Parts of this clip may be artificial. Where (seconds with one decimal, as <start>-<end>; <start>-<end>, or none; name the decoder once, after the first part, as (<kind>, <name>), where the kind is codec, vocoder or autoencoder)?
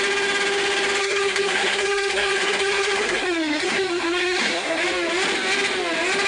1.0-4.8 (codec, SNAC)